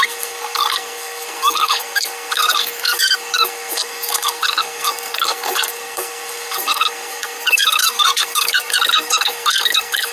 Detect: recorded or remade remade